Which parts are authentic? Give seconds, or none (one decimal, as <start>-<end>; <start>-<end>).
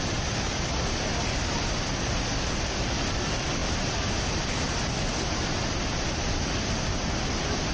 0.0-7.7